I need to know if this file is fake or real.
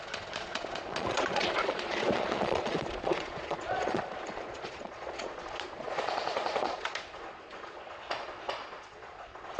fake